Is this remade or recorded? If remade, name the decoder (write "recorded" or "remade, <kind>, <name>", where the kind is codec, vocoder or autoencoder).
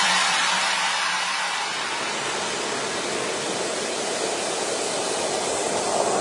recorded